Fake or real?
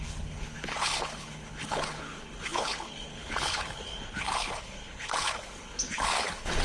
fake